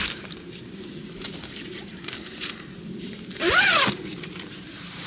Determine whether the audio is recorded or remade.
remade